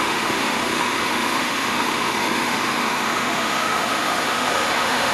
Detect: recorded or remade remade